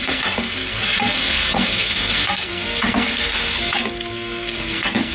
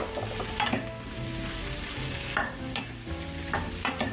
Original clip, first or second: second